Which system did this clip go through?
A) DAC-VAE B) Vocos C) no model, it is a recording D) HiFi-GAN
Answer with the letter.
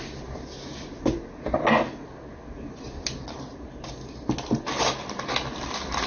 C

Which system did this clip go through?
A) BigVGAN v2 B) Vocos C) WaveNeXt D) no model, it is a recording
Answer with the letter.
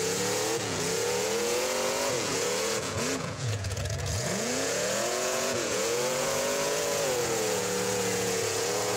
B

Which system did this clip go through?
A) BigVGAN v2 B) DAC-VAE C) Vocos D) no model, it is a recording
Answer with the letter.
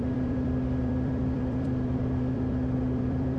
A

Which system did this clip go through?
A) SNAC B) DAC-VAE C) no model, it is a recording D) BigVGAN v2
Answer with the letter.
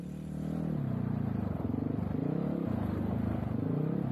C